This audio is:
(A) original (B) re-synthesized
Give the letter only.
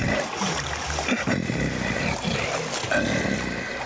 A